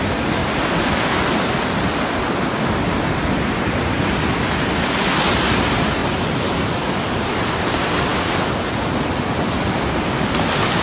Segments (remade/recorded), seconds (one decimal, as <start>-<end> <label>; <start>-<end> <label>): 0.0-10.8 recorded